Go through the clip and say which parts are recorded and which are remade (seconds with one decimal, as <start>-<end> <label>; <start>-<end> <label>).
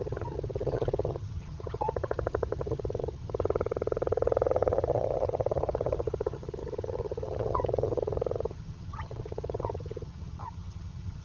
0.0-11.2 remade